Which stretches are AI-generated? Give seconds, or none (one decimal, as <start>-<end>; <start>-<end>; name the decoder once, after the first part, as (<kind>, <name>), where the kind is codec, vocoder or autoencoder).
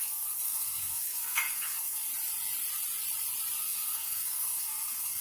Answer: 0.0-2.1 (codec, SNAC); 3.6-5.2